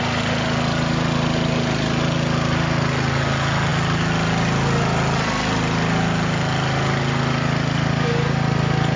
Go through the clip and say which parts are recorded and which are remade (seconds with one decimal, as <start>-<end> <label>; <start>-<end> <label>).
0.0-9.0 recorded